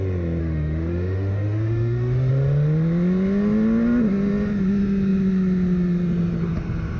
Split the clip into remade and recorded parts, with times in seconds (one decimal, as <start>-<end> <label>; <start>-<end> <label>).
0.0-0.4 recorded; 0.4-2.3 remade; 2.3-7.0 recorded